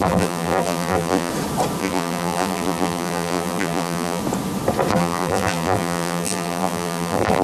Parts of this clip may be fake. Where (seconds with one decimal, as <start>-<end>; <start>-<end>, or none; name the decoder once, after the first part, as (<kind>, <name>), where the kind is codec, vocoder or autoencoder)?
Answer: 0.0-1.3 (vocoder, BigVGAN v2); 1.8-4.2; 4.9-7.4